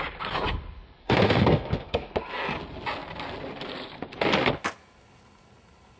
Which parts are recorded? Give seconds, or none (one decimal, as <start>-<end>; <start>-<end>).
0.0-1.0; 2.1-6.0